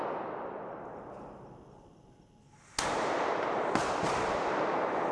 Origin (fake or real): real